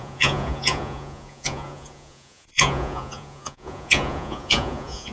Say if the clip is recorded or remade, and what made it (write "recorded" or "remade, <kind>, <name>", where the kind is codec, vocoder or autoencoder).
remade, vocoder, Vocos